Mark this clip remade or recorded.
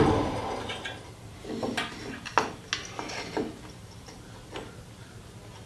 recorded